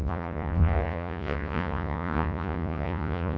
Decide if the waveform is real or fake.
fake